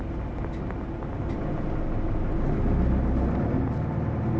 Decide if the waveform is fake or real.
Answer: real